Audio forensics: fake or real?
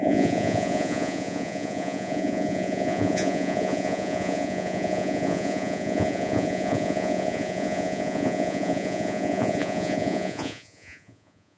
fake